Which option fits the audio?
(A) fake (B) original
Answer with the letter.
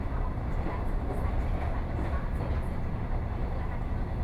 B